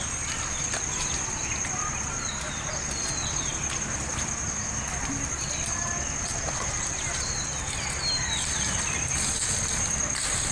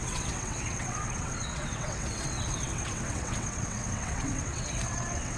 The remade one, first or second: second